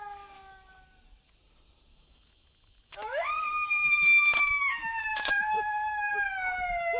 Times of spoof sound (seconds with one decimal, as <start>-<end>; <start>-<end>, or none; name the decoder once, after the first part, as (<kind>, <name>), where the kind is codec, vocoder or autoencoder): 1.9-6.1 (autoencoder, DAC-VAE)